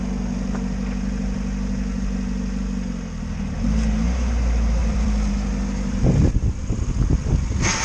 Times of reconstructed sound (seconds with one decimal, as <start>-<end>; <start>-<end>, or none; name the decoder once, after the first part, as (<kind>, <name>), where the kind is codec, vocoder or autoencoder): 4.8-5.3 (vocoder, BigVGAN v2)